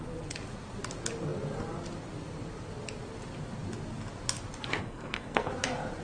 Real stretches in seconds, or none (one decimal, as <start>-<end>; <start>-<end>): 0.0-4.8; 5.5-6.0

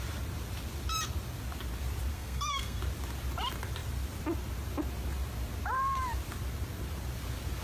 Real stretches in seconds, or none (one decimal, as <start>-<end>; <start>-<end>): 0.0-2.1; 2.8-7.6

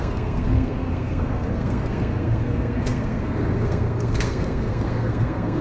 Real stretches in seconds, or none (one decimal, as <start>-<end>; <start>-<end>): none

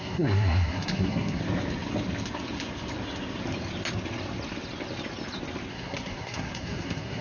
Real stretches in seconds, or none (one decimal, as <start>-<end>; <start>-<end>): 1.4-5.7

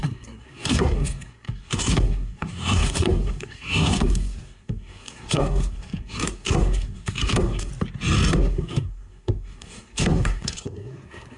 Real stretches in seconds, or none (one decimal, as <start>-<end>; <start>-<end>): 7.7-8.3